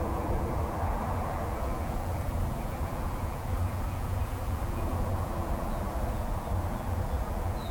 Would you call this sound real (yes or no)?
no